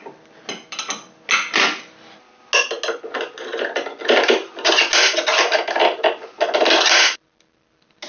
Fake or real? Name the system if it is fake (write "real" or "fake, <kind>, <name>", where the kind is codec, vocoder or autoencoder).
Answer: real